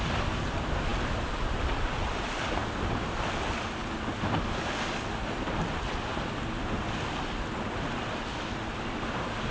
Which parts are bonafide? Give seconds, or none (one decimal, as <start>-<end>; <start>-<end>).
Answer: 3.8-9.0